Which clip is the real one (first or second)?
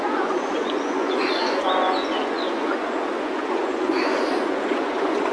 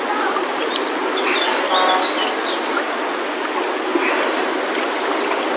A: second